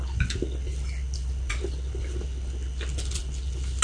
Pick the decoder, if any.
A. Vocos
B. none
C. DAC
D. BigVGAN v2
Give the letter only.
B